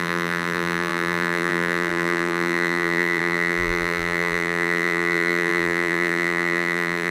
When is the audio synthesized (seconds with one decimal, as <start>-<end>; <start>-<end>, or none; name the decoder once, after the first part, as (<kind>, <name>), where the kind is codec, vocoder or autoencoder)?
0.0-7.1 (vocoder, BigVGAN v2)